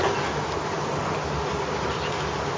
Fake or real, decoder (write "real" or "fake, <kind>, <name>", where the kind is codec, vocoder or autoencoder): real